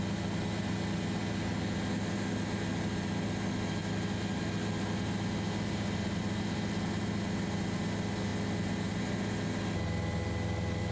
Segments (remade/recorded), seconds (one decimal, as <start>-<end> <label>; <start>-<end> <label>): 0.0-10.9 recorded